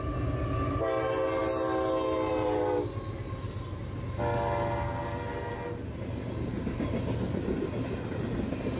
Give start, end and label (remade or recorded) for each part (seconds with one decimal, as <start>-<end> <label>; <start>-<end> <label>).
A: 0.0-8.8 recorded